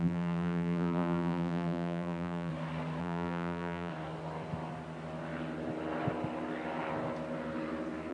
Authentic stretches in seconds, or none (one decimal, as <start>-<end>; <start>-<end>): 2.5-3.0; 3.9-8.1